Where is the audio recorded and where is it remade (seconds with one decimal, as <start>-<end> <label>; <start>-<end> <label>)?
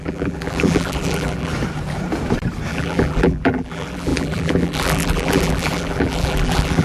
0.0-1.5 remade; 1.5-2.7 recorded; 2.7-6.8 remade